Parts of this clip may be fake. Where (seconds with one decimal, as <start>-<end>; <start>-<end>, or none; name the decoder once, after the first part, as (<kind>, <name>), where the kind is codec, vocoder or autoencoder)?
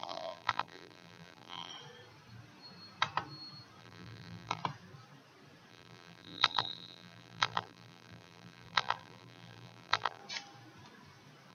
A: 0.0-1.7 (vocoder, BigVGAN v2); 3.8-4.6; 5.7-10.2